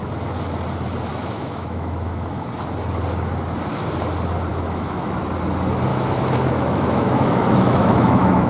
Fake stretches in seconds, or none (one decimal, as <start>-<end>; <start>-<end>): 1.1-2.5; 4.5-5.2; 5.9-8.5